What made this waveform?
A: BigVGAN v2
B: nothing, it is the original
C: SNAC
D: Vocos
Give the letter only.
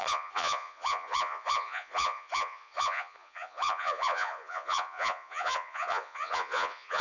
D